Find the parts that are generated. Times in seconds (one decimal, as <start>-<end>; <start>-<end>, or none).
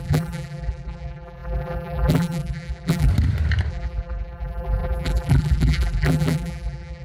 0.0-3.1; 3.7-7.0